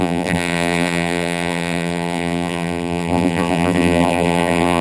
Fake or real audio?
fake